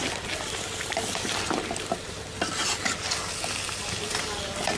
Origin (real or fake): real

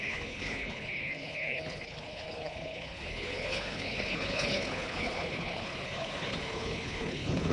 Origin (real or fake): fake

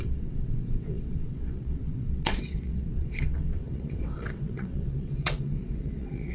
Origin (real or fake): fake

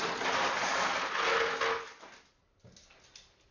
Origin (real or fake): real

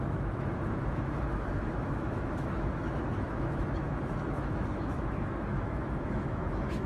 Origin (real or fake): fake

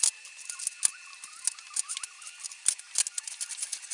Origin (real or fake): real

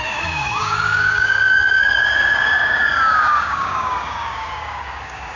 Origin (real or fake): fake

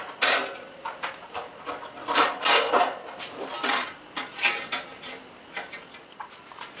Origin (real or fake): real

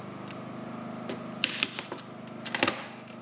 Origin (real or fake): real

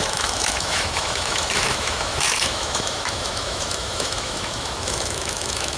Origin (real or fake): fake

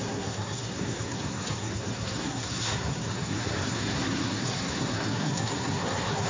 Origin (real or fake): fake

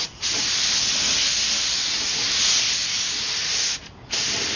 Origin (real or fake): real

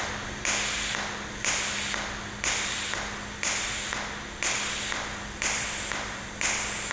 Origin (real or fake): real